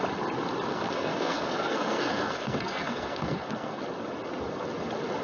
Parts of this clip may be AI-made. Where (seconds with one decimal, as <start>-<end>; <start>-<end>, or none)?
0.7-3.8